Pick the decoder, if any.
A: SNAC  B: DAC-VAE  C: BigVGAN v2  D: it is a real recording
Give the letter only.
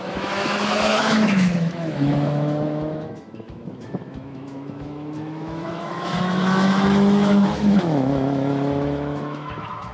B